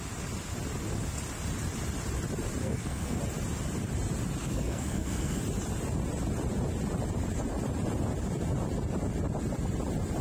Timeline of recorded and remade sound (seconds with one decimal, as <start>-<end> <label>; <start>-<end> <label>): 0.0-2.6 recorded; 2.6-3.2 remade; 3.2-4.4 recorded; 4.4-5.4 remade; 5.4-10.2 recorded